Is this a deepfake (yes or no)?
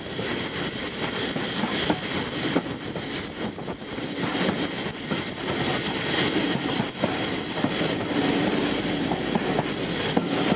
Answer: no